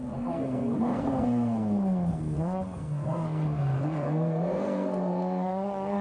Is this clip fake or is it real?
fake